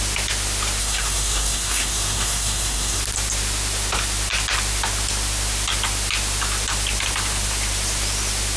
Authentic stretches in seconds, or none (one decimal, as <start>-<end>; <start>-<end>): 0.0-0.8; 3.0-8.6